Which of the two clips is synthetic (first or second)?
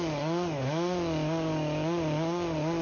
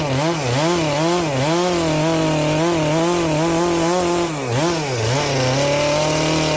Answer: first